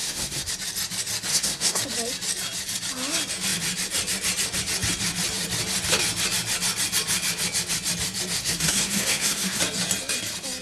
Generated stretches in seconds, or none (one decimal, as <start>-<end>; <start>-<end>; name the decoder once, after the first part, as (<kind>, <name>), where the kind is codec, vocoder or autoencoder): 0.0-0.5 (codec, SNAC); 1.3-1.8; 8.4-9.6